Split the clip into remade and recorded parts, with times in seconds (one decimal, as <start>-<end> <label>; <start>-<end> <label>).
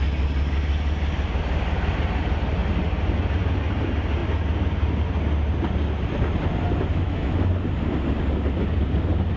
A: 0.0-6.9 recorded; 6.9-7.5 remade; 7.5-9.4 recorded